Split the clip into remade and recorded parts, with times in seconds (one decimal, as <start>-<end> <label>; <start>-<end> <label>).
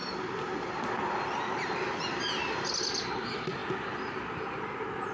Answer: 0.0-5.1 recorded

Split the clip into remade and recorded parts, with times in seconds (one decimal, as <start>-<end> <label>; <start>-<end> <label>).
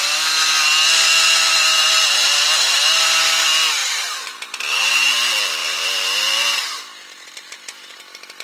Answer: 0.0-1.6 recorded; 1.6-3.2 remade; 3.2-3.8 recorded; 3.8-5.1 remade; 5.1-5.6 recorded; 5.6-8.0 remade; 8.0-8.4 recorded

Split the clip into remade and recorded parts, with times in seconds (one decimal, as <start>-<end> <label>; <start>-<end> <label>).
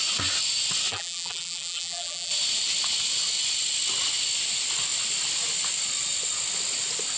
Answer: 0.0-0.9 recorded; 0.9-2.3 remade; 2.3-7.2 recorded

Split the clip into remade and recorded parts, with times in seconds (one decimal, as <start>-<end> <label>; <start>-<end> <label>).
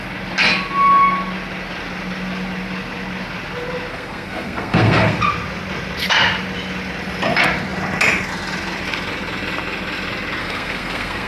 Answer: 0.0-3.9 recorded; 3.9-5.2 remade; 5.2-10.4 recorded; 10.4-11.3 remade